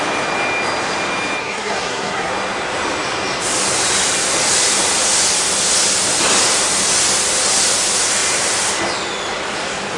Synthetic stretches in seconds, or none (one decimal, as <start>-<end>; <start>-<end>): 1.4-2.3